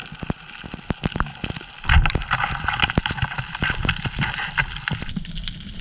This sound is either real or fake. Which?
real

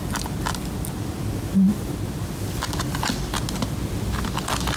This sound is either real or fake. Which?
real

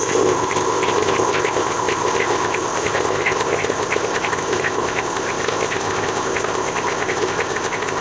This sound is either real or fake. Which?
fake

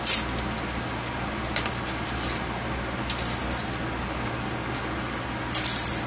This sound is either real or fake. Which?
real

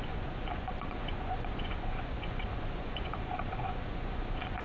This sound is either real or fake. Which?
fake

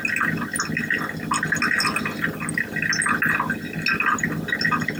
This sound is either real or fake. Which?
real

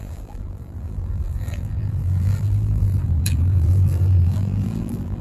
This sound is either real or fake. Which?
fake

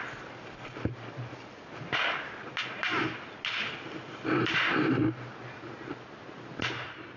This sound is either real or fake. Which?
real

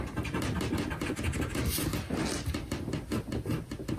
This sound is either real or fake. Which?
real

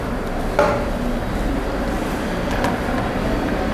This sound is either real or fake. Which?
real